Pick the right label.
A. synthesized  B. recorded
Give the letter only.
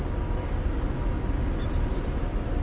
B